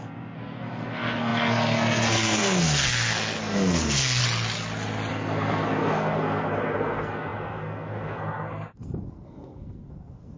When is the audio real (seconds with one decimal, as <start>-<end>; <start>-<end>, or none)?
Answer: 4.2-5.1